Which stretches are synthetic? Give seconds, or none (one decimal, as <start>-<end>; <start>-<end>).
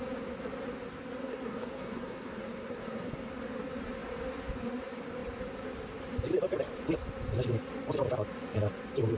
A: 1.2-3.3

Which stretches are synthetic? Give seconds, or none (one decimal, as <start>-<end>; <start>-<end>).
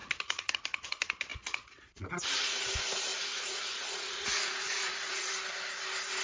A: 0.0-0.5; 1.3-2.7; 3.1-5.3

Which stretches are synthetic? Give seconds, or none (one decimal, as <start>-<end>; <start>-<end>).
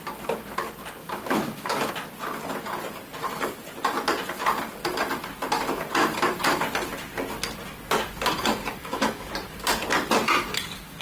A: 1.0-1.9; 8.8-9.3